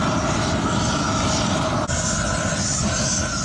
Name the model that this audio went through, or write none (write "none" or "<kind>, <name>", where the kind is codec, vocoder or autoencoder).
none